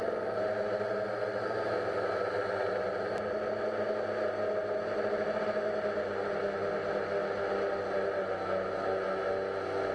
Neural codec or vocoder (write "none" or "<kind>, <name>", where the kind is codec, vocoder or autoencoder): none